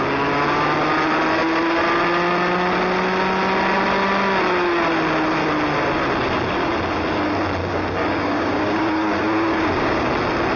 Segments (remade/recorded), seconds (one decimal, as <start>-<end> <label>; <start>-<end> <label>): 0.0-7.6 recorded; 7.6-10.1 remade; 10.1-10.6 recorded

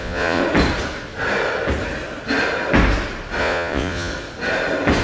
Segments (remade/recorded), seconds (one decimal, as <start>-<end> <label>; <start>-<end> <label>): 0.0-0.4 remade; 0.4-3.4 recorded; 3.4-4.1 remade; 4.1-5.0 recorded

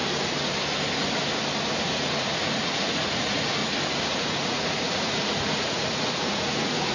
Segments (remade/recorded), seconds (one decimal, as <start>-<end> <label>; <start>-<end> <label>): 0.0-1.8 recorded; 1.8-3.6 remade; 3.6-4.2 recorded; 4.2-6.9 remade